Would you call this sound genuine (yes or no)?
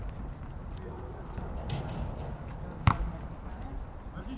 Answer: yes